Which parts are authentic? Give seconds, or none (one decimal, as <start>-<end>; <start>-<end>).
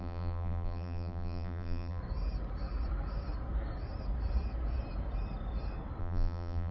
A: 2.0-6.0